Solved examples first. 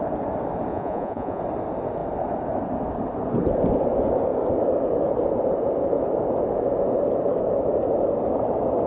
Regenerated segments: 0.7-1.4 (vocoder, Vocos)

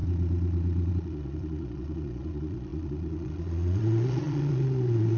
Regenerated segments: 0.0-5.2 (vocoder, Vocos)